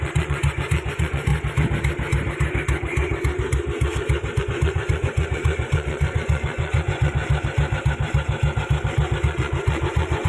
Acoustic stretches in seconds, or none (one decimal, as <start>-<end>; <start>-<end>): 1.3-4.4; 7.2-9.2